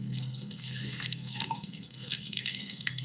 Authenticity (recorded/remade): remade